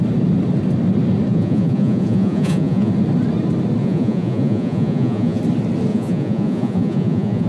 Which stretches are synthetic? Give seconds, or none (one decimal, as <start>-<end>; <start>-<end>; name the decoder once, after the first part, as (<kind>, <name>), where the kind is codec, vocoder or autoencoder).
1.3-2.9 (vocoder, Vocos); 3.8-5.4; 5.9-7.5